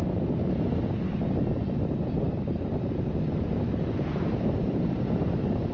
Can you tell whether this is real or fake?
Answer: real